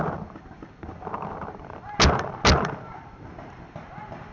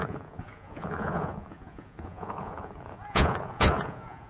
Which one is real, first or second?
first